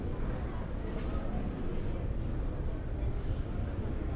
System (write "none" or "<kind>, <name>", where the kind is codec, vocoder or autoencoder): none